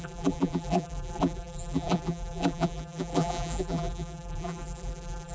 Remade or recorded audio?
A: remade